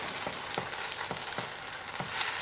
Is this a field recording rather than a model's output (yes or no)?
no